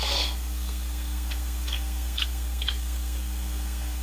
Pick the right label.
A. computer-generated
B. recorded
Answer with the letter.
A